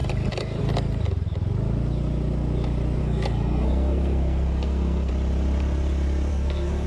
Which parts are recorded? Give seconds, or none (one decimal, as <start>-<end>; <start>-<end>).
0.0-3.0; 5.1-6.3